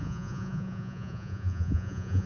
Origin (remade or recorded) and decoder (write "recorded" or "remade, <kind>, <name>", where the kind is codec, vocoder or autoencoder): remade, vocoder, Vocos